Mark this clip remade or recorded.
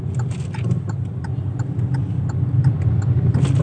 recorded